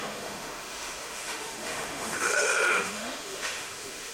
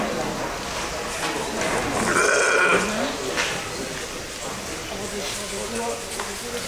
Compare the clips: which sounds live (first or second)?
second